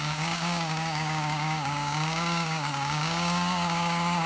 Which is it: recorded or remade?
remade